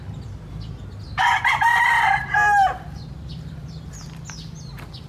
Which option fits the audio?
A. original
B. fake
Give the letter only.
A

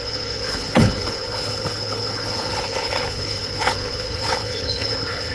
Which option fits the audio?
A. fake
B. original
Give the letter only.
A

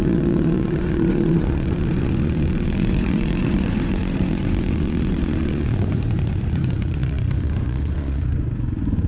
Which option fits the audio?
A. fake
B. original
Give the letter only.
A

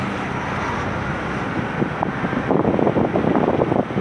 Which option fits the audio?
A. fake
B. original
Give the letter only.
B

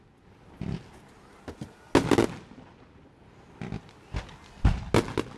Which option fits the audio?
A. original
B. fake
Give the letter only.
A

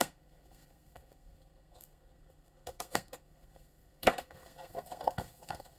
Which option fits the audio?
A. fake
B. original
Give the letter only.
A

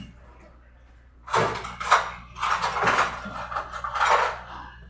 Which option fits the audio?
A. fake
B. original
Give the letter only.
B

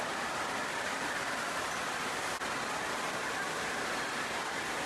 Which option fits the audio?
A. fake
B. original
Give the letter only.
B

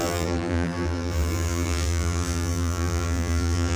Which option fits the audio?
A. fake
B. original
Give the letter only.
A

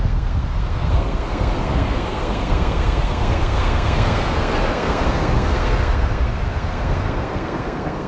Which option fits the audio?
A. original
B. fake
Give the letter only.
B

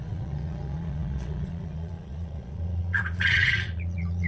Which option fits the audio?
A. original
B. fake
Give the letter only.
B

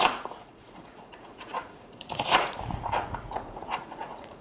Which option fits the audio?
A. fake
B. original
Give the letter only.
A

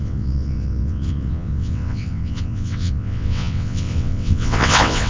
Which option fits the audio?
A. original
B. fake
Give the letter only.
B